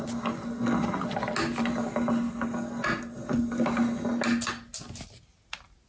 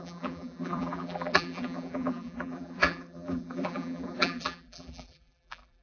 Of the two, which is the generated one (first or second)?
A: second